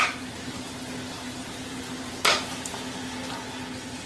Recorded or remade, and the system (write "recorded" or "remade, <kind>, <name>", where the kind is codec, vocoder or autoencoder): recorded